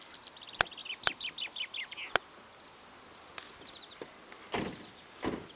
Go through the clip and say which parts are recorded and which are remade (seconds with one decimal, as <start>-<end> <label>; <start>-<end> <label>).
0.0-5.6 recorded